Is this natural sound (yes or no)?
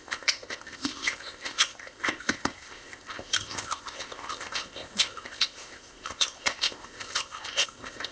no